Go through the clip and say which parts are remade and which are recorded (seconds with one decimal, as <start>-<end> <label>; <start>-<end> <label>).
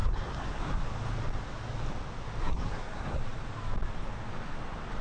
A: 0.0-0.8 remade; 0.8-2.4 recorded; 2.4-3.2 remade; 3.2-5.0 recorded